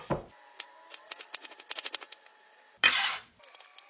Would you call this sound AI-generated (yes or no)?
no